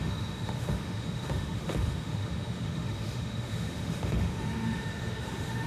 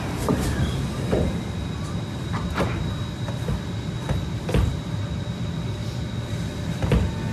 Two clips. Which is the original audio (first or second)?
second